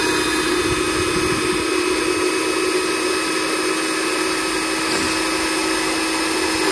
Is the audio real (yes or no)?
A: yes